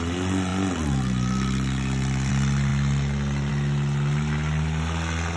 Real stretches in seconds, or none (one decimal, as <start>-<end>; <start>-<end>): 0.0-5.4